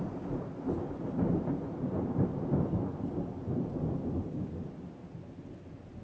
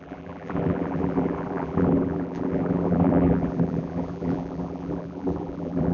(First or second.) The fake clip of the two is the second